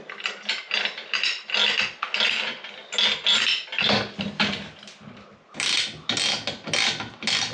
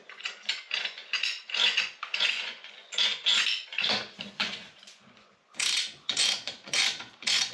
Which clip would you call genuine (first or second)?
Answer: first